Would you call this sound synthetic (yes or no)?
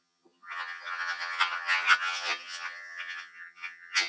yes